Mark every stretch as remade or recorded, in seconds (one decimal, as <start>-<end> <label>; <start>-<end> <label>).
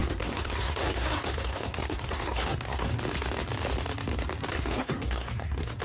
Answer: 0.0-2.9 remade; 2.9-4.5 recorded; 4.5-5.8 remade